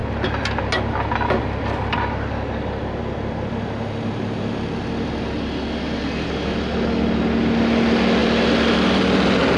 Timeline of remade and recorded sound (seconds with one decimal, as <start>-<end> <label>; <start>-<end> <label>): 0.0-9.6 recorded